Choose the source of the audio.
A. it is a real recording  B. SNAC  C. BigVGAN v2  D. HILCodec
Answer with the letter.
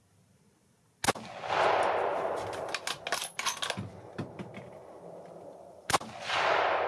A